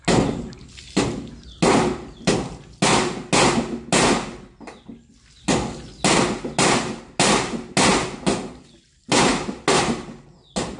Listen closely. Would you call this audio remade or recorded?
recorded